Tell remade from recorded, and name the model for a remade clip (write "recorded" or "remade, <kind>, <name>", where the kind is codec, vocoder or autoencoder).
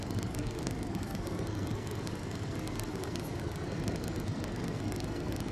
remade, codec, SNAC